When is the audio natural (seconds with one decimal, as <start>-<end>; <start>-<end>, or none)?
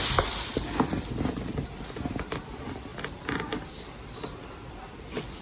0.0-5.4